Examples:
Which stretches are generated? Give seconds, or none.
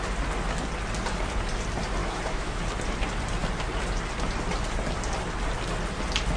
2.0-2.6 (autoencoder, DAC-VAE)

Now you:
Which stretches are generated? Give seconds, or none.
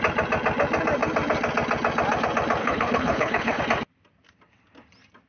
2.6-3.6 (codec, HILCodec)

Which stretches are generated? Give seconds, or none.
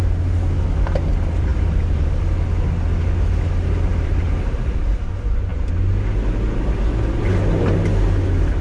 1.5-2.2 (vocoder, BigVGAN v2); 3.9-4.8